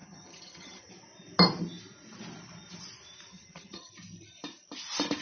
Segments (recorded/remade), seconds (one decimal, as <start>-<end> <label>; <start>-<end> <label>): 0.0-0.9 remade; 0.9-3.3 recorded; 3.3-3.9 remade; 3.9-5.2 recorded